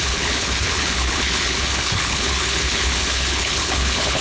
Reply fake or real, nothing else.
fake